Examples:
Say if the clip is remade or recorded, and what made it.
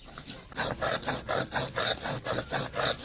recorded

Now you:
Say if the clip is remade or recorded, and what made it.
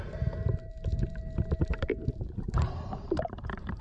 remade, vocoder, BigVGAN v2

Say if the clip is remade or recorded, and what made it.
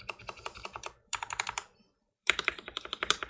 remade, vocoder, BigVGAN v2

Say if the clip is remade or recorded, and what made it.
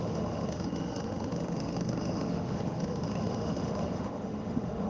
remade, autoencoder, DAC-VAE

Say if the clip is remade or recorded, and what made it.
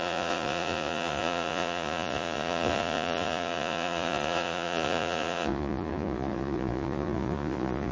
remade, vocoder, Vocos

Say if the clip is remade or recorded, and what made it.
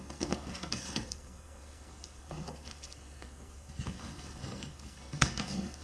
remade, codec, SNAC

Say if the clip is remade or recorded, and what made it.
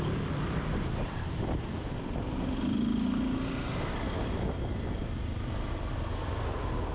recorded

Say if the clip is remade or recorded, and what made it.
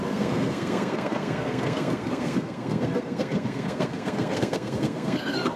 remade, codec, SNAC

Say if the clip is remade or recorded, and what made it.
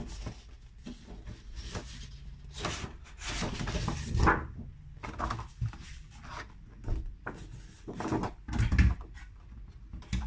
recorded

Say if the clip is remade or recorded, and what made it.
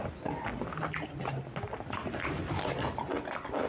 recorded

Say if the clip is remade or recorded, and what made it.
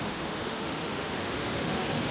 remade, autoencoder, DAC-VAE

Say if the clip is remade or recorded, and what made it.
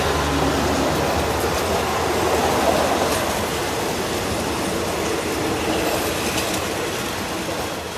recorded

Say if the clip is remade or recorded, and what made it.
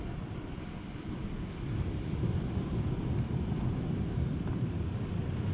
recorded